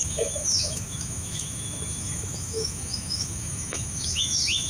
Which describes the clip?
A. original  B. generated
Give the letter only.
B